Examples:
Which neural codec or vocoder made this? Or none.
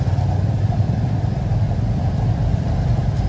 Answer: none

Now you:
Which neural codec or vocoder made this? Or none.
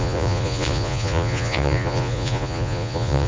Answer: vocoder, Vocos